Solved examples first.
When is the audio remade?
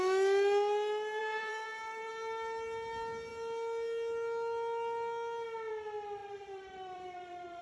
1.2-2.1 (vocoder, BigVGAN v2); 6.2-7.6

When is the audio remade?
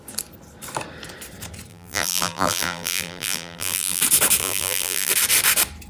1.7-4.0 (vocoder, BigVGAN v2); 4.4-5.1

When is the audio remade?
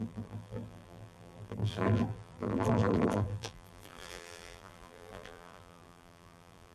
0.0-6.7 (vocoder, BigVGAN v2)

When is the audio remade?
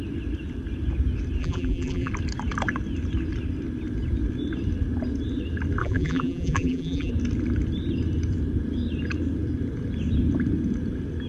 1.4-2.1 (vocoder, BigVGAN v2); 5.8-7.1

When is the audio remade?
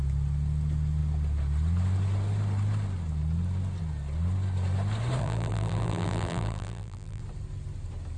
5.2-7.2 (vocoder, BigVGAN v2)